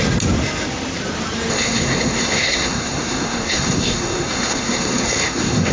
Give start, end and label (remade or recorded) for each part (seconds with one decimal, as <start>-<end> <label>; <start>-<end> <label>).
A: 0.0-1.5 recorded; 1.5-5.7 remade